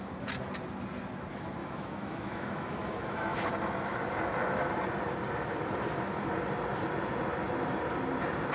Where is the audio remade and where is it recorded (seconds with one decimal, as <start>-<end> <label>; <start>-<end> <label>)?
0.0-1.6 recorded; 1.6-3.5 remade; 3.5-8.5 recorded